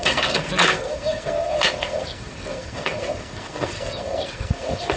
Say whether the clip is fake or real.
fake